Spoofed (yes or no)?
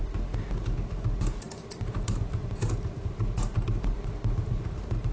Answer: no